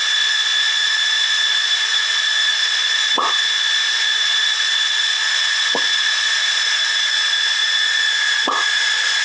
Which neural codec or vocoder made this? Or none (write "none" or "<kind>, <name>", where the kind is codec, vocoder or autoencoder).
vocoder, Vocos